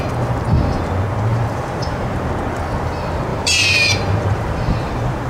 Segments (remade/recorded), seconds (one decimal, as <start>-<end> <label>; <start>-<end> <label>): 0.0-1.3 recorded; 1.3-2.3 remade; 2.3-3.3 recorded; 3.3-5.3 remade